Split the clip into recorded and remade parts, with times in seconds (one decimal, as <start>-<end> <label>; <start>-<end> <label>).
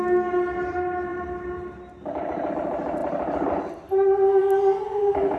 0.0-1.1 recorded; 1.1-2.5 remade; 2.5-3.0 recorded; 3.0-3.6 remade; 3.6-5.4 recorded